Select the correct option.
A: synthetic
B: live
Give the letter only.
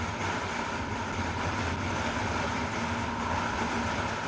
B